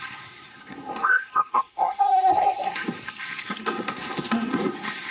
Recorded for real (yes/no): no